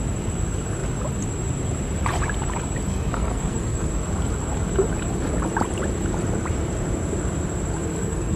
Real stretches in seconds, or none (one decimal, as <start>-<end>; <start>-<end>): 0.0-2.9; 3.9-7.9